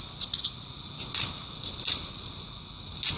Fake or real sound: real